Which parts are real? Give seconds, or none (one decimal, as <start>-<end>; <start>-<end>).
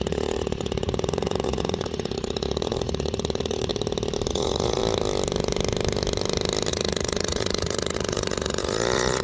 3.7-4.3; 4.8-6.7